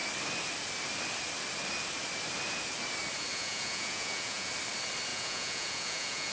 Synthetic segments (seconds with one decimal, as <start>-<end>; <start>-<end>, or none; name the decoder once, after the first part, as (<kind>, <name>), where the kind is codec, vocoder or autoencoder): 3.3-4.5 (vocoder, Vocos); 5.1-6.3